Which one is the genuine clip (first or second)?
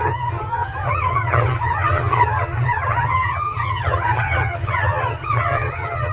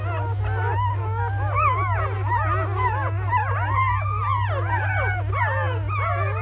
second